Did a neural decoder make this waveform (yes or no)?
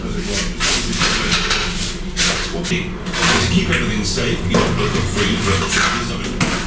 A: no